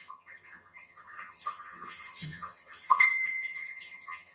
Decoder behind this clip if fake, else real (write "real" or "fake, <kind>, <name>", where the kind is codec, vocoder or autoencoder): fake, vocoder, HiFi-GAN